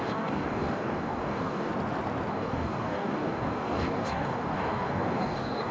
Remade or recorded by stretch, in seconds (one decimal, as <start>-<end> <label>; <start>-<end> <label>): 0.0-1.7 remade; 1.7-2.3 recorded; 2.3-5.7 remade